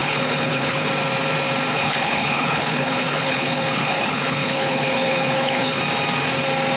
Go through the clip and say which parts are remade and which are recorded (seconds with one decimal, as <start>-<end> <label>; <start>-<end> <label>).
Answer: 0.0-0.9 remade; 0.9-1.7 recorded; 1.7-5.8 remade; 5.8-6.8 recorded